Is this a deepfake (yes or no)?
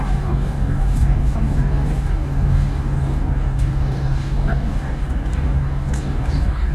yes